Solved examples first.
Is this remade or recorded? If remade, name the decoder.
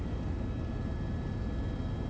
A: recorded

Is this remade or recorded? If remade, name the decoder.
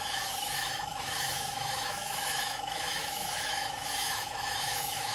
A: remade, autoencoder, DAC-VAE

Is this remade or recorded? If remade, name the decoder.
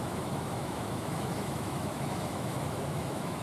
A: remade, autoencoder, DAC-VAE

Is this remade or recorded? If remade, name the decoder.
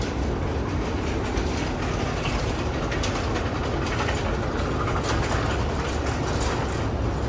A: recorded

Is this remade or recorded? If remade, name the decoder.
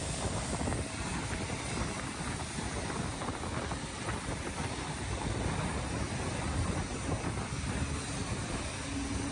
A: recorded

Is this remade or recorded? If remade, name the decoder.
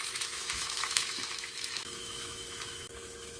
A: remade, autoencoder, DAC-VAE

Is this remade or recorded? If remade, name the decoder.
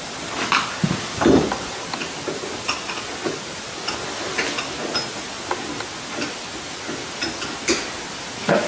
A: recorded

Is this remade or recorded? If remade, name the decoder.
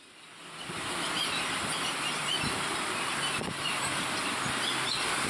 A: recorded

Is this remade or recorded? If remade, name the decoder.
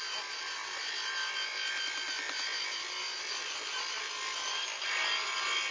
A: recorded